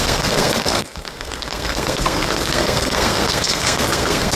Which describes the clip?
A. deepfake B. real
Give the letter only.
A